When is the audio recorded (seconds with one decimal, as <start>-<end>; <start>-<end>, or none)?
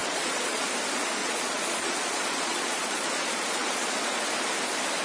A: 0.7-1.2; 4.2-5.0